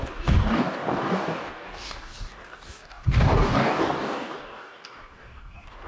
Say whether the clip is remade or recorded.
remade